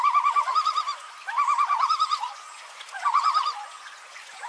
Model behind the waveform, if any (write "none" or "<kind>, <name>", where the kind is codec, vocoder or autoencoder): vocoder, Vocos